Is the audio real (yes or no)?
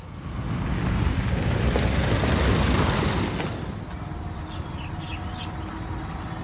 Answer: yes